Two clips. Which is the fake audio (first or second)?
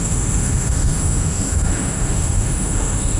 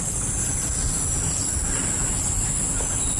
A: first